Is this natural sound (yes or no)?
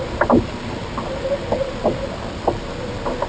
yes